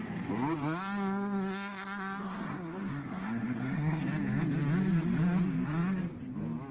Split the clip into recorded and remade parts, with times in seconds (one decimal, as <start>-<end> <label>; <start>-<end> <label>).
0.0-2.2 recorded; 2.2-4.0 remade; 4.0-6.7 recorded